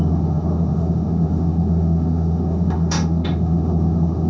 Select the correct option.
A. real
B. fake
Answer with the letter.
B